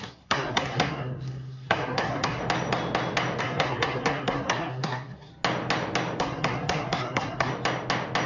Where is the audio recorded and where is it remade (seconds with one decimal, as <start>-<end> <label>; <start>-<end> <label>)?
0.0-2.4 remade; 2.4-3.4 recorded; 3.4-5.3 remade; 5.3-6.2 recorded; 6.2-7.5 remade; 7.5-8.3 recorded